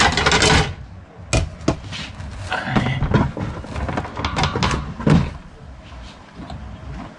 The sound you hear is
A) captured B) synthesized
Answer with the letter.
A